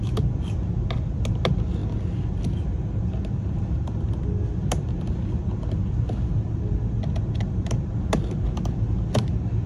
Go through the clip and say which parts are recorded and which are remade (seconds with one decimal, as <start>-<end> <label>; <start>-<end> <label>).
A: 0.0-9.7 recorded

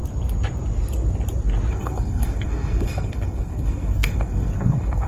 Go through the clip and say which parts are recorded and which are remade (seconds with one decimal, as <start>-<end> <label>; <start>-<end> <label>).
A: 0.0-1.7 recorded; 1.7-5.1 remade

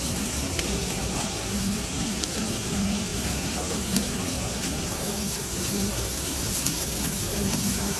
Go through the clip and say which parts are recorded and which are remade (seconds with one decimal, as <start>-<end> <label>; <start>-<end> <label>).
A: 0.0-8.0 remade